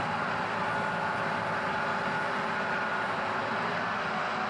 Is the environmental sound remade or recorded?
recorded